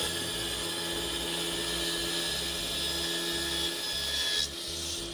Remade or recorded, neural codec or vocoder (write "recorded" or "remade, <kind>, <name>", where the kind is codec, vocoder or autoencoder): recorded